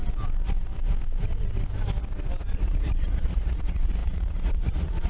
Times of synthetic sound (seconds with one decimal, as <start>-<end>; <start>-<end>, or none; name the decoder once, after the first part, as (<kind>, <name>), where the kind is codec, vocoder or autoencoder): 2.4-5.1 (vocoder, Vocos)